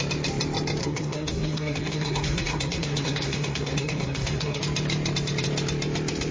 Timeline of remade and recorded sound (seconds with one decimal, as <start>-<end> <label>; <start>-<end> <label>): 0.0-0.8 recorded; 0.8-4.6 remade; 4.6-6.3 recorded